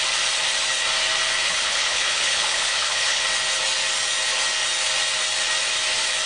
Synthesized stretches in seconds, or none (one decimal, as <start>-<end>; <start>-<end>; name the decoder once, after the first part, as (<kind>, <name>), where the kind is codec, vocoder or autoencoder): 1.4-3.2 (codec, HILCodec)